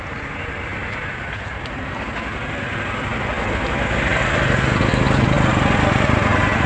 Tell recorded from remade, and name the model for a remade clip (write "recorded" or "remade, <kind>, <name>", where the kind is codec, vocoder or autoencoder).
recorded